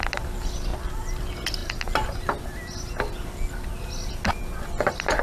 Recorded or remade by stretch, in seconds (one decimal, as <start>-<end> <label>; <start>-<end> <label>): 0.0-0.7 recorded; 0.7-1.2 remade; 1.2-5.2 recorded